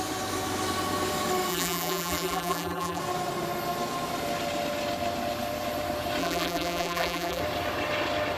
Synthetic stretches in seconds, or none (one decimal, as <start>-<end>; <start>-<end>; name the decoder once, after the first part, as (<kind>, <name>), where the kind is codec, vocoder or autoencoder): 1.5-3.0 (vocoder, BigVGAN v2); 6.2-7.4